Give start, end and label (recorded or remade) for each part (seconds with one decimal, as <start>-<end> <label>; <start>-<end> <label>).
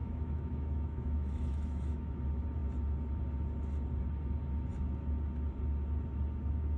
0.0-2.2 remade; 2.2-6.8 recorded